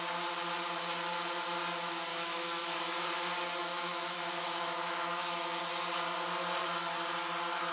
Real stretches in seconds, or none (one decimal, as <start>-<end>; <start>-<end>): 0.0-2.1; 2.8-3.6; 5.6-7.7